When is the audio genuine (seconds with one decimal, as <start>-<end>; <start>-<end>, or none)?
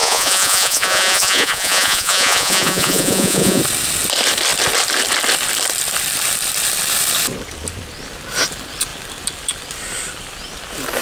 3.6-11.0